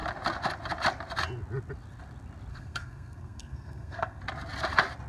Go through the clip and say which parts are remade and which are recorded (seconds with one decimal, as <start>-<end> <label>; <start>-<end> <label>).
0.0-2.5 recorded; 2.5-4.2 remade; 4.2-5.1 recorded